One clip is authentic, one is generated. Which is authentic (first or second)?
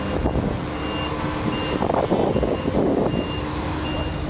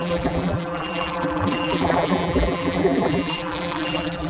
first